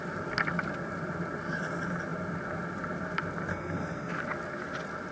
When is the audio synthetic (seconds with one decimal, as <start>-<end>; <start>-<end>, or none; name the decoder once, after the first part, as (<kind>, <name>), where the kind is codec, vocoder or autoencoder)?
3.5-4.1 (codec, SNAC)